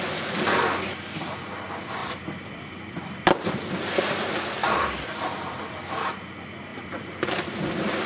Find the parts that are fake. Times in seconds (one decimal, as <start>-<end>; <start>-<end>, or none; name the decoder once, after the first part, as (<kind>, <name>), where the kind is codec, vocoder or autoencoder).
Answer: 2.0-6.1 (vocoder, BigVGAN v2); 6.7-8.1